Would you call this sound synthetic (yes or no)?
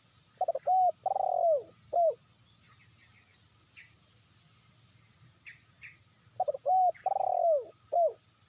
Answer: no